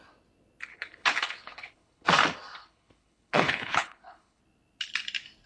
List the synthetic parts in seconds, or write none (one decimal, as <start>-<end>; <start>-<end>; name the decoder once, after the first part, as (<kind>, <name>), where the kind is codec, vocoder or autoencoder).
0.7-2.1 (codec, HILCodec); 2.6-4.4

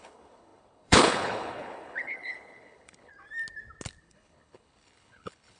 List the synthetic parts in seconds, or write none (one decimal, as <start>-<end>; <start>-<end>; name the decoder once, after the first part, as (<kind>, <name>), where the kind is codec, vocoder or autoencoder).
0.0-3.1 (codec, HILCodec); 4.0-5.6

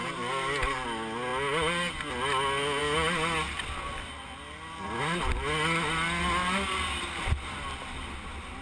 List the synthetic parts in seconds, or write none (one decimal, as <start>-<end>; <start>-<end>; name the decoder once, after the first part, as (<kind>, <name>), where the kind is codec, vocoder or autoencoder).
none